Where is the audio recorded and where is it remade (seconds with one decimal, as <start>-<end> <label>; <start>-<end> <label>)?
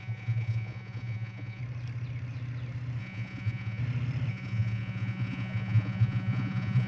0.0-1.6 remade; 1.6-3.0 recorded; 3.0-3.8 remade; 3.8-4.3 recorded; 4.3-6.9 remade